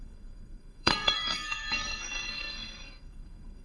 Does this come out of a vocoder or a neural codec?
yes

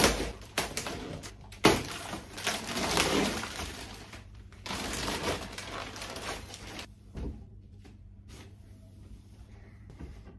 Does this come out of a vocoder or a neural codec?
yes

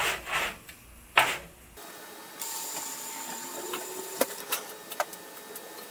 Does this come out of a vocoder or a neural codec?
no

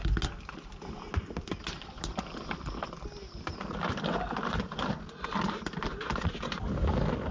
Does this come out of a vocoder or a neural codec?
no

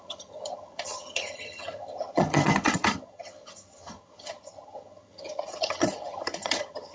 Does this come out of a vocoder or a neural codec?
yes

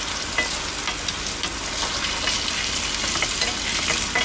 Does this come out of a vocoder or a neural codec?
no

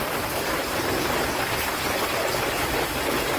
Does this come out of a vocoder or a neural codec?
no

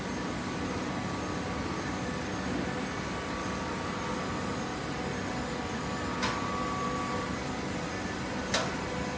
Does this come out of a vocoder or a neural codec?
no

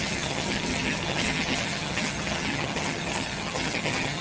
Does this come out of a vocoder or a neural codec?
yes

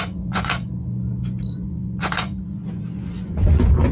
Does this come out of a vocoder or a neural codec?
yes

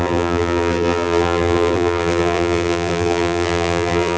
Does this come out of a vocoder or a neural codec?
yes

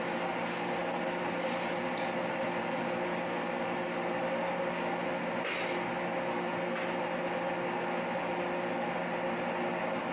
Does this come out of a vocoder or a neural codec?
no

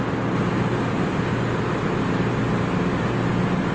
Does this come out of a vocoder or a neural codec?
no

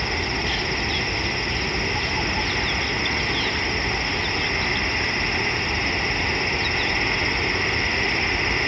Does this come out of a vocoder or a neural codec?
no